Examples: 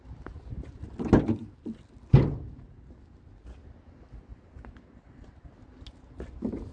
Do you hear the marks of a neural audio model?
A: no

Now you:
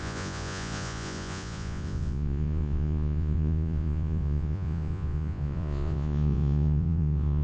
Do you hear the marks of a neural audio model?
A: yes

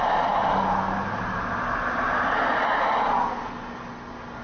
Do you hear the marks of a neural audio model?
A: no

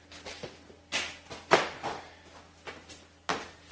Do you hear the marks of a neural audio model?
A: no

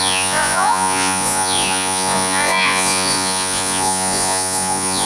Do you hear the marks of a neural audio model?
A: yes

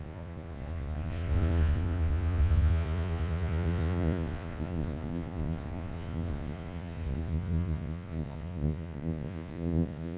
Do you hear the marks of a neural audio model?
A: yes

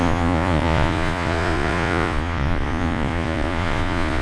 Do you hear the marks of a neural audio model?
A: yes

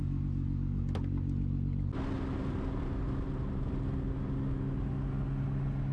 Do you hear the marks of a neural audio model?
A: no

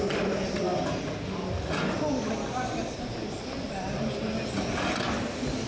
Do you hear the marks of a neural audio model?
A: no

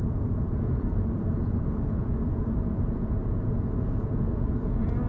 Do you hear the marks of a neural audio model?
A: yes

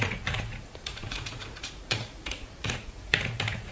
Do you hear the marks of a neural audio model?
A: yes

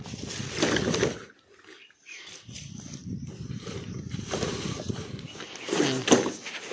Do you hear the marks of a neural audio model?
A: no